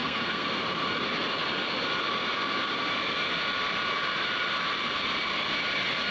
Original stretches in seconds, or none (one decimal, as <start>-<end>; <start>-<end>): 0.6-6.1